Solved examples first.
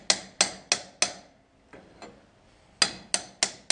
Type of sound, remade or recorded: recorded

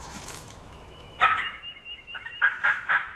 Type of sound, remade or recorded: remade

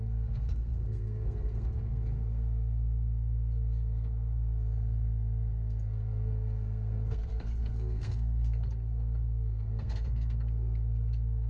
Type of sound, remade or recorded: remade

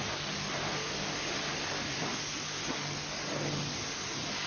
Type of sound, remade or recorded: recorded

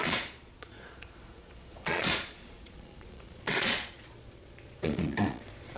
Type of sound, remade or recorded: remade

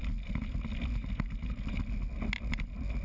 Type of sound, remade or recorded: recorded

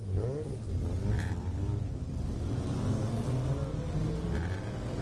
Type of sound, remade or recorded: recorded